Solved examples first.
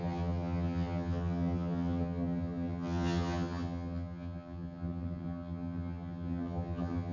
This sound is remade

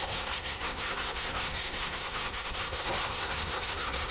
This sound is remade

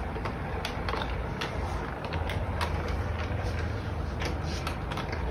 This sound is recorded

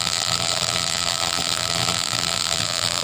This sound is remade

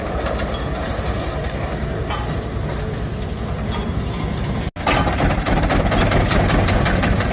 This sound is recorded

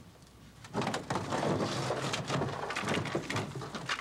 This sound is recorded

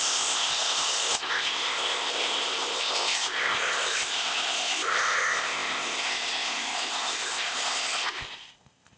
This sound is remade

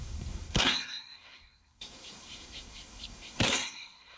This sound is remade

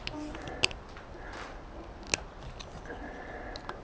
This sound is recorded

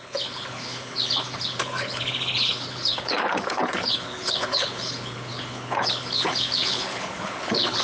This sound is remade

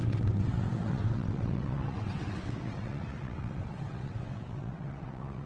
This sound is remade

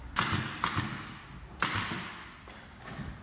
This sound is recorded